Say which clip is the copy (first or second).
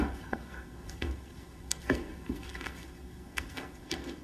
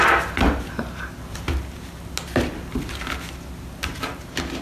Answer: first